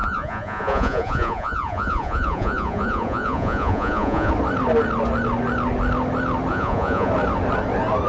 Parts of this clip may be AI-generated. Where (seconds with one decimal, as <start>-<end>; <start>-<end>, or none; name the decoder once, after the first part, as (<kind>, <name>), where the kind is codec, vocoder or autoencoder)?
0.0-4.3 (vocoder, Vocos); 6.5-7.1